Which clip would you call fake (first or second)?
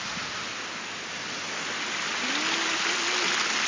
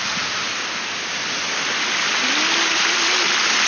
second